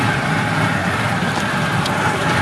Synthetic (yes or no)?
no